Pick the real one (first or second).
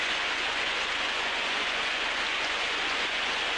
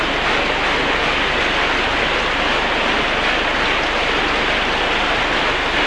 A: second